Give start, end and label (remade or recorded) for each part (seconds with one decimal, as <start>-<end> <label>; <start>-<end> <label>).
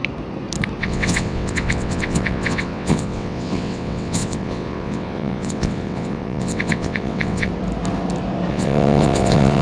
0.0-0.8 recorded; 0.8-7.5 remade; 7.5-8.5 recorded; 8.5-9.6 remade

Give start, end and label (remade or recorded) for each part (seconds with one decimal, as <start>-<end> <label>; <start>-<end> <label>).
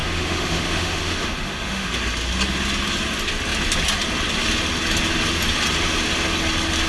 0.0-1.9 remade; 1.9-6.9 recorded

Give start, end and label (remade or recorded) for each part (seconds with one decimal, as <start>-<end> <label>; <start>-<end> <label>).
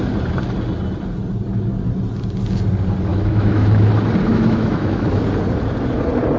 0.0-3.1 recorded; 3.1-3.9 remade; 3.9-4.3 recorded; 4.3-5.2 remade; 5.2-6.4 recorded